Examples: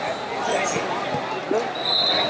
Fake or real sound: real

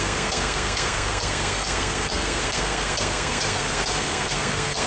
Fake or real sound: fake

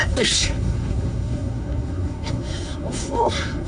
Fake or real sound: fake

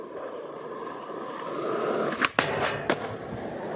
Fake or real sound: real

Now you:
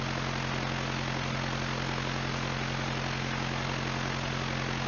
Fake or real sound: real